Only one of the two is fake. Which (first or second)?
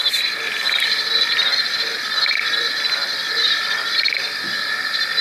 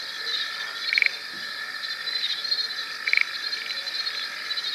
second